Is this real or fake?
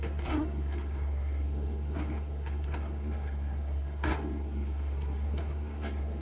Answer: fake